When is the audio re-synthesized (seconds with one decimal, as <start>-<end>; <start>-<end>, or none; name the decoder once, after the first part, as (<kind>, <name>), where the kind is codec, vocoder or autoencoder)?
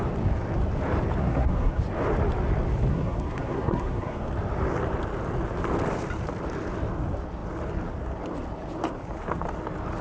1.2-1.8 (codec, SNAC); 2.9-4.3